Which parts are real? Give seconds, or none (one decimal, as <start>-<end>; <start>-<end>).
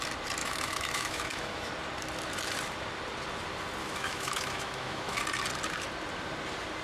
0.0-0.4; 1.7-3.8; 5.2-6.8